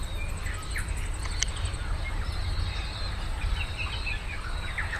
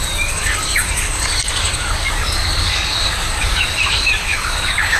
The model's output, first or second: second